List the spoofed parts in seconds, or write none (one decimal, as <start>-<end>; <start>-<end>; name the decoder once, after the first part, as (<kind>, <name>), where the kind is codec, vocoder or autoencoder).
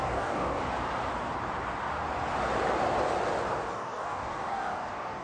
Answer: 0.0-0.6 (codec, DAC); 3.7-5.2